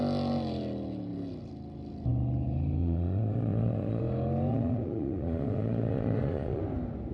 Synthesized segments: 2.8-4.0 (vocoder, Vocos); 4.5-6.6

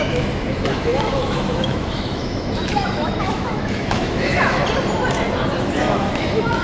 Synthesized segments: 0.0-4.6 (autoencoder, DAC-VAE); 5.6-6.6

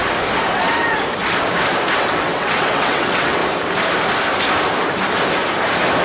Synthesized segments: 2.0-3.4 (vocoder, WaveNeXt)

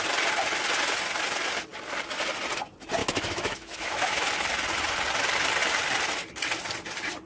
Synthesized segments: 3.0-4.3 (autoencoder, DAC-VAE)

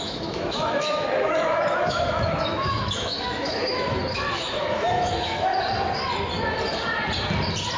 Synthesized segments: 0.0-5.5 (autoencoder, DAC-VAE)